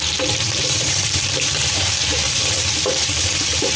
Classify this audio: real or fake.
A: fake